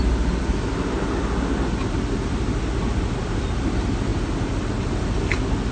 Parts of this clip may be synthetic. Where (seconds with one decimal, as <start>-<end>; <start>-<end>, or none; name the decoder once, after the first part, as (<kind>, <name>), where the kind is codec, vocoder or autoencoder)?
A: none